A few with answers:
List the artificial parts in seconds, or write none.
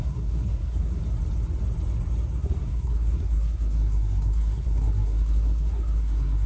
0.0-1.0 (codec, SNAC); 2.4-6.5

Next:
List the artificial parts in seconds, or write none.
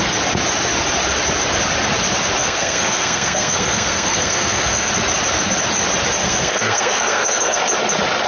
2.4-4.9 (codec, SNAC); 6.2-7.6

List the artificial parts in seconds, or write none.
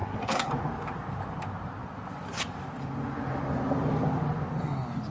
0.0-0.5 (codec, SNAC)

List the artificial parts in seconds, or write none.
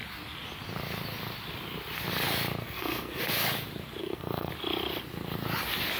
2.6-3.2 (codec, SNAC); 4.0-4.5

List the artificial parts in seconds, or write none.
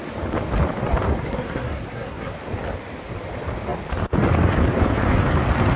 1.1-2.3 (codec, SNAC)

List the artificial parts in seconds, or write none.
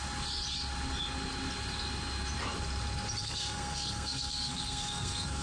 3.2-5.4 (codec, SNAC)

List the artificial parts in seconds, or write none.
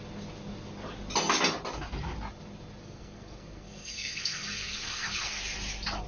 2.8-5.4 (codec, SNAC)